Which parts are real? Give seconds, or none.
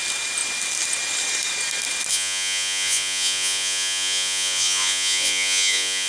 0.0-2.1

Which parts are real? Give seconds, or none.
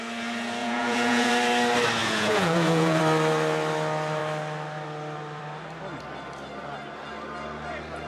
0.0-0.6; 1.3-2.0; 3.0-8.1